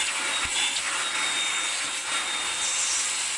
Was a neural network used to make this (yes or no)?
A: no